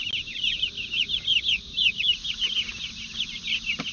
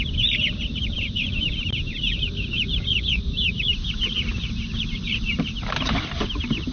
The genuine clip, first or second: first